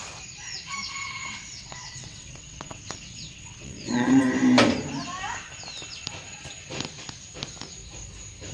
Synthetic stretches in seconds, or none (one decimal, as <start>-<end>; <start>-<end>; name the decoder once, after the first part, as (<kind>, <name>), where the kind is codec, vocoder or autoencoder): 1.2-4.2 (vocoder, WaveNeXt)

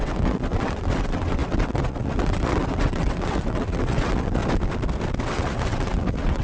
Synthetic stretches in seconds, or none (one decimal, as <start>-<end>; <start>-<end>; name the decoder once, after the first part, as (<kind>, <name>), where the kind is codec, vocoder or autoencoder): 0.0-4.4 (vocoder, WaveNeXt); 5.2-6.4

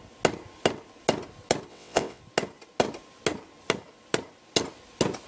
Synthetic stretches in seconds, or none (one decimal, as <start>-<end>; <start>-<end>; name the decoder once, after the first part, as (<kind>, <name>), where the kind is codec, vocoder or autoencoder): 1.7-2.2 (vocoder, WaveNeXt)

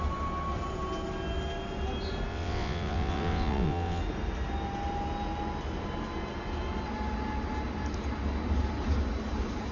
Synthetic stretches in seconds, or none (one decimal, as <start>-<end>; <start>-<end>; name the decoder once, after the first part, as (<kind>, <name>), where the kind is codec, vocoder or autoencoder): 2.3-4.0 (vocoder, WaveNeXt)

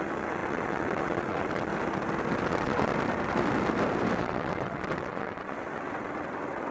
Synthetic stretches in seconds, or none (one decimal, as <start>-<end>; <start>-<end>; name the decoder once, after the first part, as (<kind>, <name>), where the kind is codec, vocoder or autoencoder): 0.0-1.7 (vocoder, WaveNeXt); 2.5-2.9; 4.2-6.7

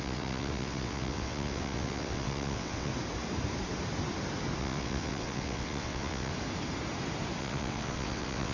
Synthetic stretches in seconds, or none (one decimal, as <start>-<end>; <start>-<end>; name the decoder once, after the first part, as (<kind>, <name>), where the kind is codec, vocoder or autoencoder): 0.0-2.9 (vocoder, WaveNeXt); 4.6-6.3; 7.4-8.5

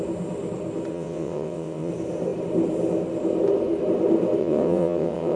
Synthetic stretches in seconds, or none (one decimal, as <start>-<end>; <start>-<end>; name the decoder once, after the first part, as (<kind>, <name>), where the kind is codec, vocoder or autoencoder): 0.9-1.9 (vocoder, WaveNeXt); 4.4-5.4